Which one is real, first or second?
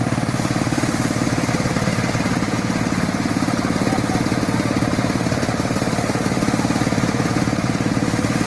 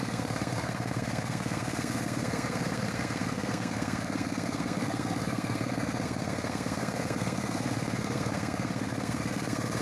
first